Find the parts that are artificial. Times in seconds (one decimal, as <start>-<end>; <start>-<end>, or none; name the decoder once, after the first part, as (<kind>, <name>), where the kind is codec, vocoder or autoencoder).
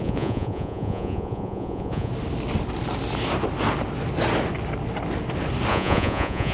0.0-2.1 (vocoder, Vocos); 5.7-6.5